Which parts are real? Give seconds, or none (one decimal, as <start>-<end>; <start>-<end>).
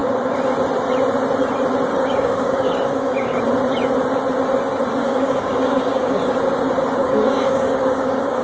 0.0-1.9; 3.4-5.0; 6.3-7.0